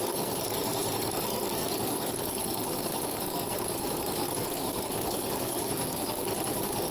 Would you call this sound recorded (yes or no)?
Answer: no